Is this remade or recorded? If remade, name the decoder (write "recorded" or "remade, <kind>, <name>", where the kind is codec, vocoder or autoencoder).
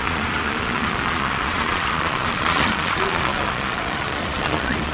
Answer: remade, vocoder, Vocos